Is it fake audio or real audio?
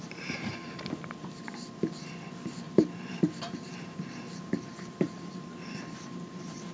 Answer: fake